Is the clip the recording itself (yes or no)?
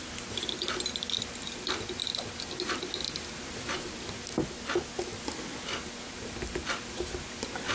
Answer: yes